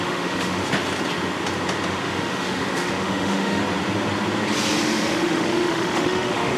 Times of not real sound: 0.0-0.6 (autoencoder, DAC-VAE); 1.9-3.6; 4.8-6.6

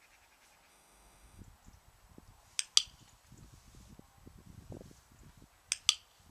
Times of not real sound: 0.7-1.4 (autoencoder, DAC-VAE)

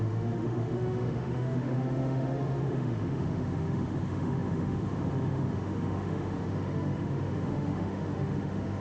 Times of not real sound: 0.0-8.8 (autoencoder, DAC-VAE)